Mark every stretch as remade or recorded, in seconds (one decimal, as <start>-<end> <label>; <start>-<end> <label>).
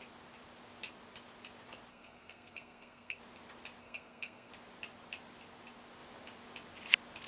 0.0-1.9 recorded; 1.9-3.2 remade; 3.2-3.8 recorded; 3.8-4.5 remade; 4.5-7.3 recorded